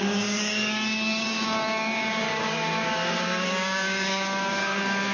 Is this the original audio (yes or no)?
no